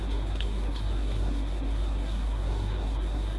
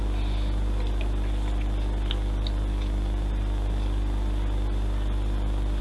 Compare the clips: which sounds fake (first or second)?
first